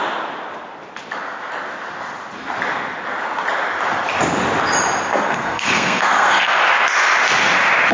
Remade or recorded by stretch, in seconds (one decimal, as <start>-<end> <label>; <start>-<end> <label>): 0.0-5.1 recorded; 5.1-6.6 remade; 6.6-7.9 recorded